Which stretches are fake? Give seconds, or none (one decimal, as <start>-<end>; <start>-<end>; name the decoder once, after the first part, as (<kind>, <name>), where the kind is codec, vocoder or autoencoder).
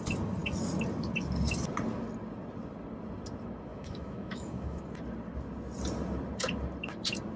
3.7-4.8 (autoencoder, DAC-VAE)